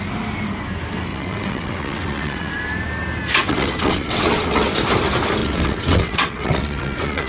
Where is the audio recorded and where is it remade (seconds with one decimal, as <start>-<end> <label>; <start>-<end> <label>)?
0.0-1.1 recorded; 1.1-2.5 remade; 2.5-3.4 recorded; 3.4-4.7 remade; 4.7-5.4 recorded; 5.4-7.3 remade